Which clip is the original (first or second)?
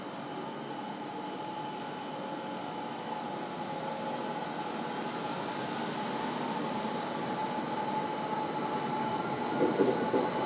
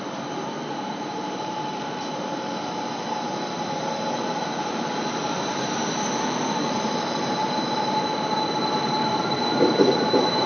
first